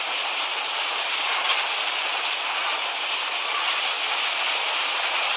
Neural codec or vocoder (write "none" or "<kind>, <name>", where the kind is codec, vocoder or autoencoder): none